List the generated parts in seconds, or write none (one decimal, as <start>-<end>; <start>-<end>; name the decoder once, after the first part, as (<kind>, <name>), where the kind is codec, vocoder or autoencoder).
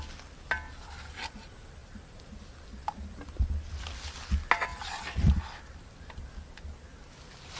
none